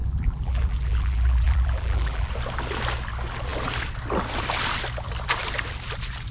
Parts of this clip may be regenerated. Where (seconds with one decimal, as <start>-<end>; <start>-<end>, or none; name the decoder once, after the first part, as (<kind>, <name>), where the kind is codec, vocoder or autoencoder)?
0.0-2.3 (vocoder, BigVGAN v2)